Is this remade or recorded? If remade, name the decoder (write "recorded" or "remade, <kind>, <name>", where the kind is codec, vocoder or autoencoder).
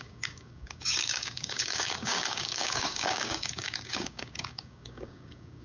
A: remade, codec, DAC